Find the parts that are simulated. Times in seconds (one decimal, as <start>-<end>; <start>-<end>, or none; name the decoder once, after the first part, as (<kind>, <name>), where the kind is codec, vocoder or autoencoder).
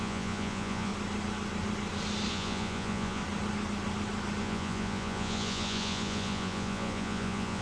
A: 0.0-0.9 (vocoder, Vocos); 2.3-3.2; 4.4-7.6